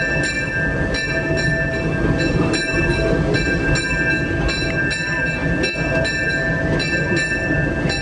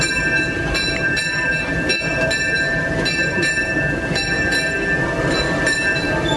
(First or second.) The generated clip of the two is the second